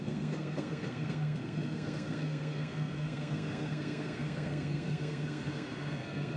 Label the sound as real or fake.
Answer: fake